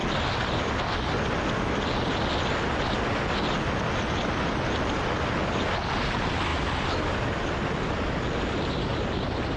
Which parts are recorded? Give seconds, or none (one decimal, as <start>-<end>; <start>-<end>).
0.0-9.6